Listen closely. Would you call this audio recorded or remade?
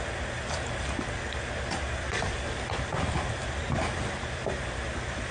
recorded